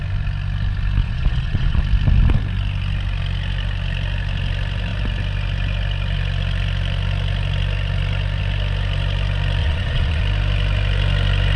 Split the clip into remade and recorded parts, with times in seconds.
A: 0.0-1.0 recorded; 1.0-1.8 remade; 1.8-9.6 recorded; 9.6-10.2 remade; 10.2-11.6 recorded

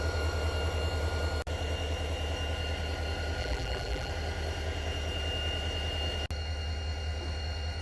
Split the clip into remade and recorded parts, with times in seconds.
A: 0.0-3.4 recorded; 3.4-4.1 remade; 4.1-7.8 recorded

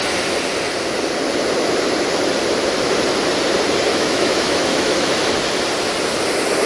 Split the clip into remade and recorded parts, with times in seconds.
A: 0.0-3.9 recorded; 3.9-5.3 remade; 5.3-6.7 recorded

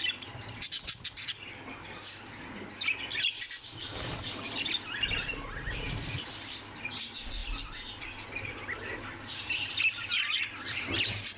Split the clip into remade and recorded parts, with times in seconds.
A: 0.0-11.4 recorded

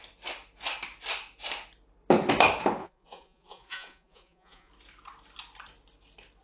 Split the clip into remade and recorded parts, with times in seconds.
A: 0.0-2.8 recorded; 2.8-4.7 remade; 4.7-6.4 recorded

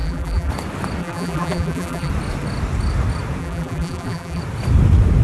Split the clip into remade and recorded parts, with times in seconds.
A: 0.0-0.5 remade; 0.5-1.0 recorded; 1.0-2.1 remade; 2.1-3.4 recorded; 3.4-4.4 remade; 4.4-5.2 recorded

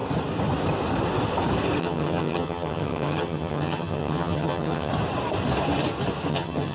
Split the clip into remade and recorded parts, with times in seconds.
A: 0.0-1.8 recorded; 1.8-4.9 remade; 4.9-6.3 recorded; 6.3-6.7 remade